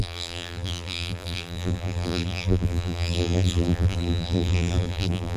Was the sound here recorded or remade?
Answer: remade